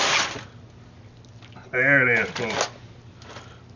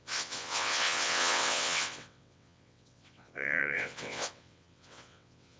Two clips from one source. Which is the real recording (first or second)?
first